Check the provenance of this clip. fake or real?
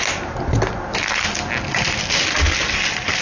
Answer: real